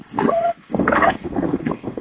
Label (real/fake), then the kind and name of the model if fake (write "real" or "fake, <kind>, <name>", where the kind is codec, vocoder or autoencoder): fake, codec, SNAC